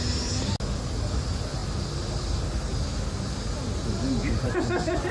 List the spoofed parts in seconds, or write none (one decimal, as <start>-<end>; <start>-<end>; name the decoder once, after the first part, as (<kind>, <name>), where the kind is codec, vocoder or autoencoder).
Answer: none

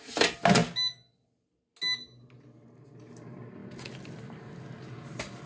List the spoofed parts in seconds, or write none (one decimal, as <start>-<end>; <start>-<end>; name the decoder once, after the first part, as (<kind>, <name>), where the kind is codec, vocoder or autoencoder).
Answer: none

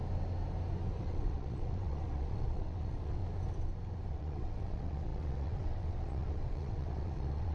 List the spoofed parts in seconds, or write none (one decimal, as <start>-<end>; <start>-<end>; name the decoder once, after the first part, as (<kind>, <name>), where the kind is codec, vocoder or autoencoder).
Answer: 1.0-3.2 (vocoder, WaveNeXt); 4.1-7.5

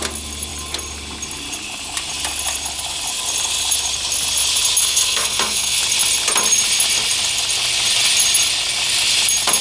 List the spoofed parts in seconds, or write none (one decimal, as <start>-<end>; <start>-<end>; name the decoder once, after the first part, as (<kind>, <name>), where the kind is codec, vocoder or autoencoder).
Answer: 4.8-5.8 (codec, SNAC)